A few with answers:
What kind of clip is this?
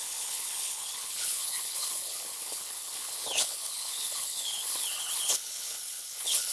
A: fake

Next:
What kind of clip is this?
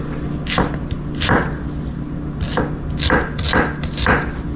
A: real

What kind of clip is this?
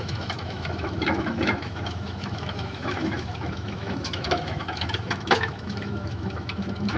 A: fake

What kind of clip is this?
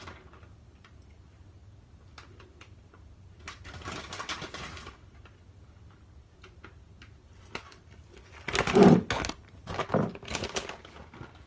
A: real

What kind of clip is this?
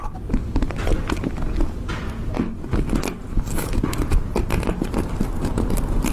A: real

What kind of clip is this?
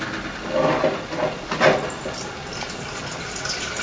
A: real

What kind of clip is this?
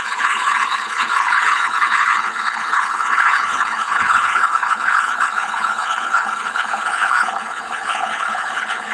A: fake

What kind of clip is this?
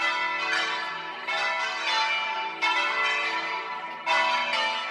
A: real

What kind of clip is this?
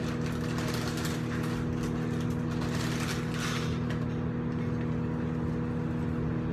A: real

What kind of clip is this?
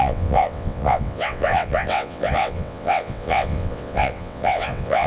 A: fake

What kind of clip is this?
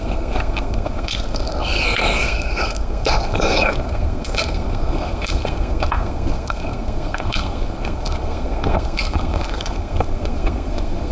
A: fake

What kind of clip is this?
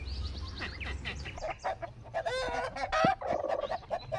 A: real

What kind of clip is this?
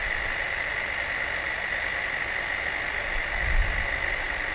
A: real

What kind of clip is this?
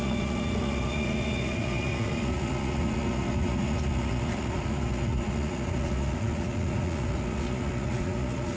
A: fake